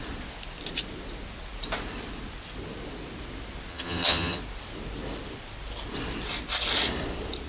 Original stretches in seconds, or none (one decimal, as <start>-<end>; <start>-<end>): 0.0-3.7; 4.4-7.5